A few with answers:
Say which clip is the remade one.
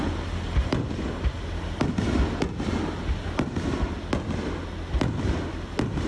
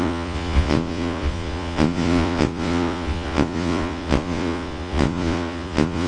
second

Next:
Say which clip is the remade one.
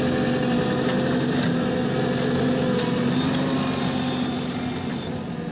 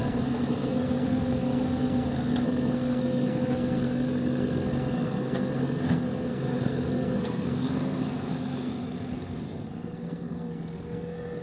second